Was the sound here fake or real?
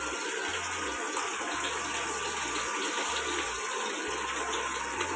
real